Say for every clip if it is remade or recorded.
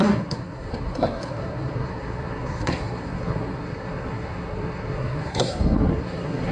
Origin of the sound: remade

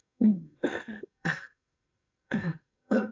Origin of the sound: remade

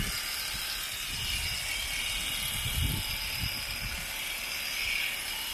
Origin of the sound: recorded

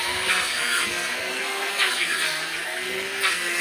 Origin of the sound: remade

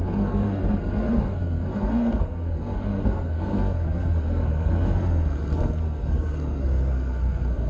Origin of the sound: remade